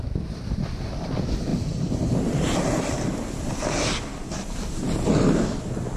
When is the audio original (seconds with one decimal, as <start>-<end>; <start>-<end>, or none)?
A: 0.0-6.0